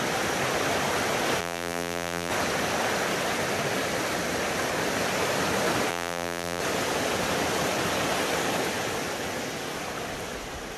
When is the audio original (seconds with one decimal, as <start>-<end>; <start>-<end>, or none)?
0.0-1.4; 2.3-5.9; 6.6-10.8